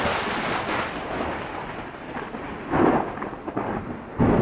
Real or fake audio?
real